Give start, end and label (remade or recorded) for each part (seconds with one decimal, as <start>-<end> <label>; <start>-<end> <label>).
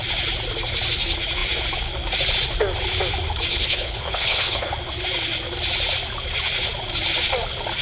0.0-3.5 recorded; 3.5-4.7 remade; 4.7-7.8 recorded